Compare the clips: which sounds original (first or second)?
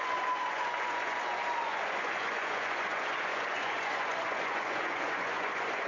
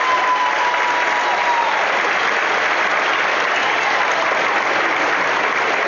second